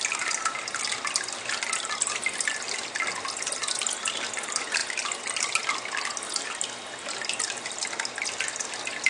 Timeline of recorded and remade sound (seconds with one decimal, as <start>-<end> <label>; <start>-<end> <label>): 0.0-9.1 recorded